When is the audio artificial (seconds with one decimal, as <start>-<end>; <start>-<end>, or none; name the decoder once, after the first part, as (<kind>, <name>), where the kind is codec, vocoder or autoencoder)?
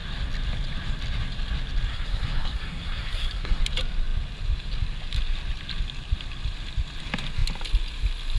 1.9-3.6 (codec, SNAC)